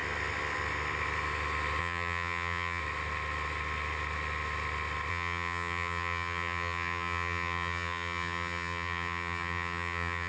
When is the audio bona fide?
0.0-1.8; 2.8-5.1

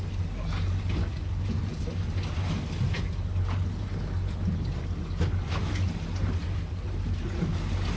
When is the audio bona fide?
0.0-1.1; 1.8-8.0

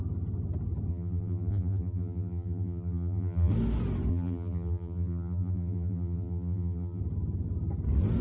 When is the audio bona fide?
0.0-0.9; 3.5-4.1; 7.0-8.2

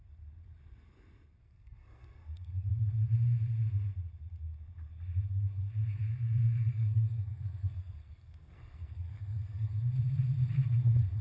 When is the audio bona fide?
0.0-1.4; 2.7-6.0; 9.7-11.2

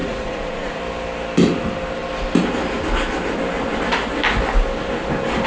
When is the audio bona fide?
0.8-5.5

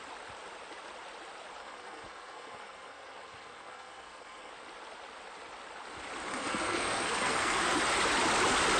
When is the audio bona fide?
0.0-1.6; 4.5-6.3; 7.8-8.8

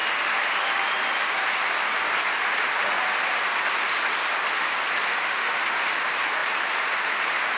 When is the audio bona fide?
0.0-5.1; 5.6-7.6